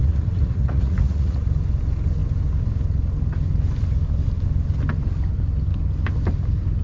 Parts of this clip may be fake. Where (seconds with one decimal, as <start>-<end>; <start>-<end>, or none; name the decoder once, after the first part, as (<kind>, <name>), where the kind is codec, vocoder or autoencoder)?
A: 0.0-1.4 (vocoder, Vocos)